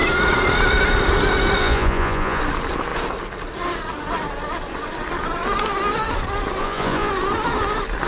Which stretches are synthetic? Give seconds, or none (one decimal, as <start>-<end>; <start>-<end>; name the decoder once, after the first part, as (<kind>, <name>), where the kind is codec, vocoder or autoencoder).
1.6-2.4 (vocoder, Vocos); 6.6-7.1